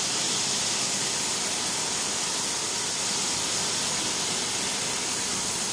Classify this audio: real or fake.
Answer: real